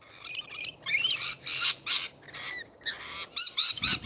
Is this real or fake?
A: real